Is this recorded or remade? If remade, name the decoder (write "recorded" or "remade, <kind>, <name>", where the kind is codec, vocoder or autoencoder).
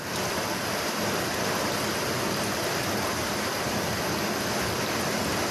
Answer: recorded